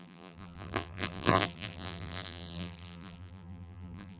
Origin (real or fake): fake